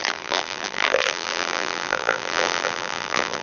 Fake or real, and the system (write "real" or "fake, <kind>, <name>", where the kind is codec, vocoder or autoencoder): fake, vocoder, BigVGAN v2